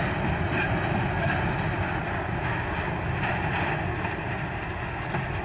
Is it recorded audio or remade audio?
recorded